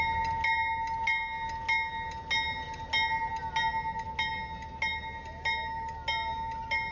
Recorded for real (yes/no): yes